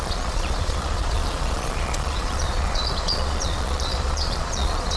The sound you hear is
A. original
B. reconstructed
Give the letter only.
B